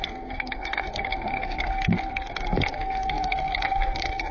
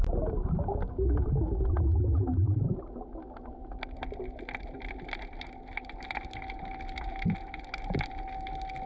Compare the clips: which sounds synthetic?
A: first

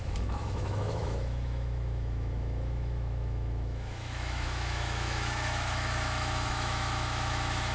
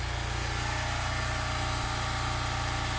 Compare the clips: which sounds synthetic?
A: first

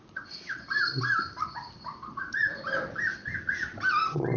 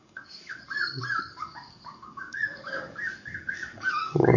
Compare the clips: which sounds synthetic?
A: second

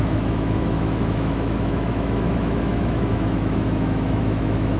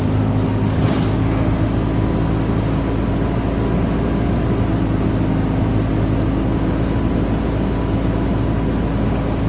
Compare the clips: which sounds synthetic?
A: first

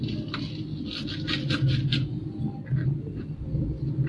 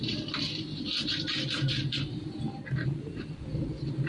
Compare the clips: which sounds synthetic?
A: second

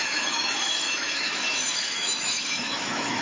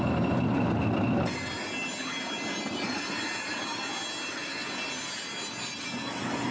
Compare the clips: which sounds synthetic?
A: first